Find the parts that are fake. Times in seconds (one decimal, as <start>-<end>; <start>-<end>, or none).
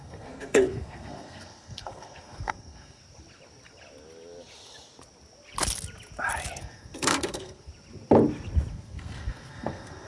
0.0-3.0; 6.6-7.7; 8.7-10.1